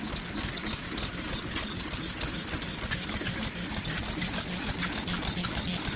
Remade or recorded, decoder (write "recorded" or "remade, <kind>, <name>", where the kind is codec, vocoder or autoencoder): recorded